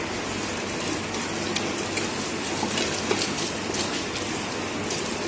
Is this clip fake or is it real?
real